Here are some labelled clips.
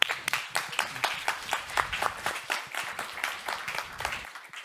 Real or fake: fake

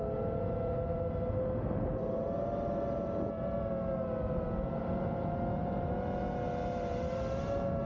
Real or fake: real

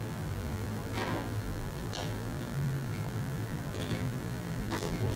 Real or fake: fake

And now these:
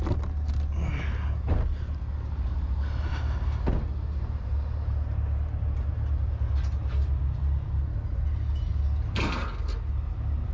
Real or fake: real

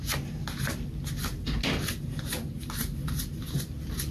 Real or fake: real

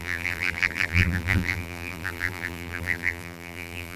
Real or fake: fake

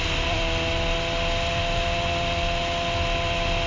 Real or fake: real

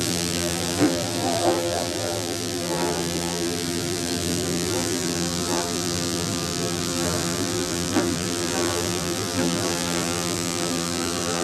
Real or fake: fake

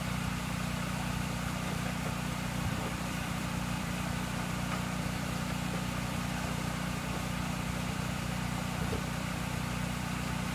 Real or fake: fake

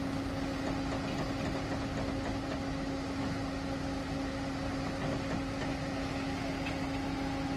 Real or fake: real